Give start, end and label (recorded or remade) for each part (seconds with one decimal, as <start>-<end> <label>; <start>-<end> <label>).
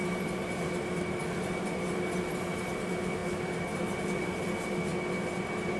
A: 0.0-5.8 recorded